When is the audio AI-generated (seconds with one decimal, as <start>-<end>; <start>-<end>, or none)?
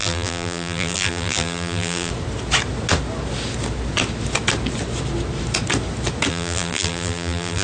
0.0-2.1; 6.3-7.6